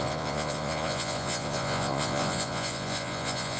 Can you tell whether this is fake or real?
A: fake